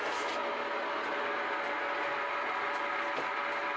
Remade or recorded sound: recorded